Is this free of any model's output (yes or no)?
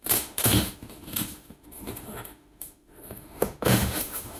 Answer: no